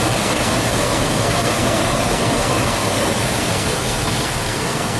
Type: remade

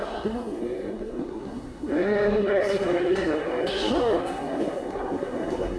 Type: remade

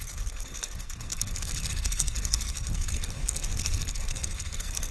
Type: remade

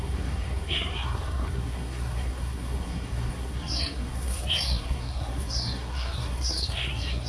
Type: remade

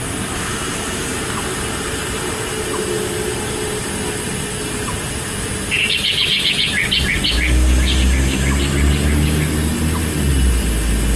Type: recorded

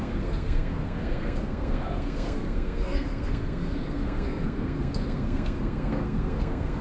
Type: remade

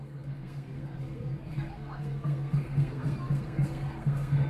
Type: remade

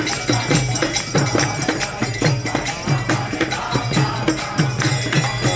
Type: recorded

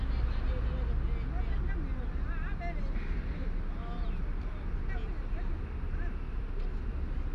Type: recorded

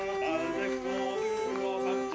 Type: recorded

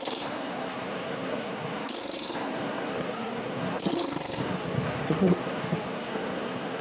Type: remade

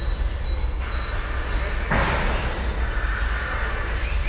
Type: recorded